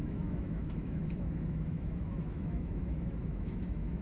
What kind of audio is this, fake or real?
fake